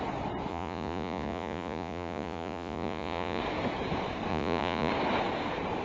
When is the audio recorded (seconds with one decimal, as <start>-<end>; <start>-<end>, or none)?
0.0-0.5; 3.4-4.3; 4.9-5.8